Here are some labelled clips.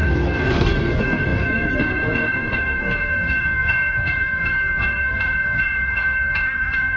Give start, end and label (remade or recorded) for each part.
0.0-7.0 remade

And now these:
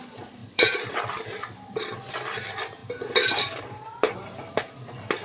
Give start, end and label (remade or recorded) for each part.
0.0-0.4 recorded; 0.4-0.9 remade; 0.9-5.2 recorded